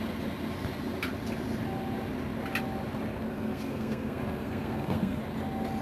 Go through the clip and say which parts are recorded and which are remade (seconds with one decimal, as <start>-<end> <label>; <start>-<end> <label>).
0.0-3.3 recorded; 3.3-5.2 remade; 5.2-5.8 recorded